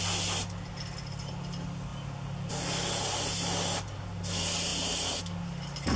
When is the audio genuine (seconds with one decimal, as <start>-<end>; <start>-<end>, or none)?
0.0-6.0

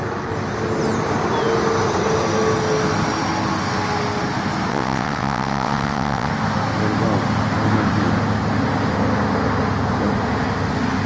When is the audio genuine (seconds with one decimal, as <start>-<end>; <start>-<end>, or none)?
0.0-4.7; 6.3-11.1

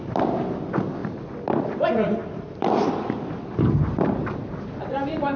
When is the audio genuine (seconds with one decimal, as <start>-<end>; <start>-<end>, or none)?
0.0-5.4

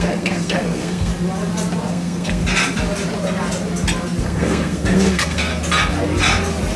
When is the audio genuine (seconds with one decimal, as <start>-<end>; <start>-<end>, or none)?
1.1-1.9; 2.4-4.2; 5.5-6.8

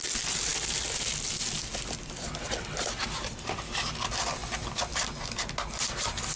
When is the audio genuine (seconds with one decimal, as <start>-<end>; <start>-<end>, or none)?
0.0-6.4

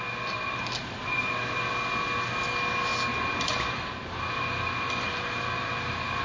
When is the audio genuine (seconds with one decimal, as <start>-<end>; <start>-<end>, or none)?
0.0-6.2

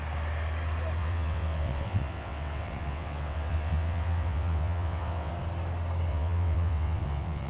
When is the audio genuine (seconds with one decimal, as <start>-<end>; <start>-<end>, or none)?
0.0-1.0; 5.3-6.1